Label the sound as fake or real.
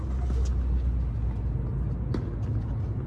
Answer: real